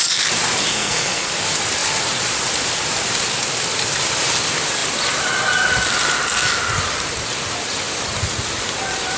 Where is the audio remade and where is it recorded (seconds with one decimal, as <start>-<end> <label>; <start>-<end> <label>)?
0.0-0.7 recorded; 0.7-1.3 remade; 1.3-9.2 recorded